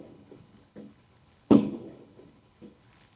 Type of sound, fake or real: fake